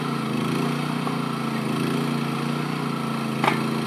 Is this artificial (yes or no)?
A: no